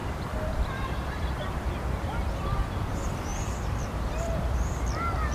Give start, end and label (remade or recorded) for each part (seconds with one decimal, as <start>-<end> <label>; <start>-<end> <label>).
0.0-2.4 remade; 2.4-3.3 recorded; 3.3-5.3 remade